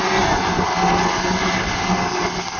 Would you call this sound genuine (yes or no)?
yes